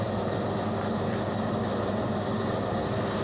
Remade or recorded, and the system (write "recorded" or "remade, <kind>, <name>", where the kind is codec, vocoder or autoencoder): recorded